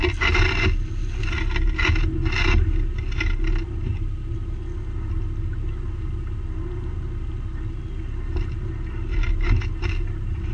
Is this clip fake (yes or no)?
no